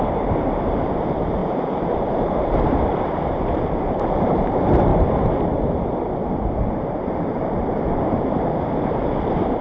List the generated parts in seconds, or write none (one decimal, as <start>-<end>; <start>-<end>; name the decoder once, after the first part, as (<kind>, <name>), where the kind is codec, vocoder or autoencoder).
0.0-4.9 (vocoder, BigVGAN v2); 6.9-9.6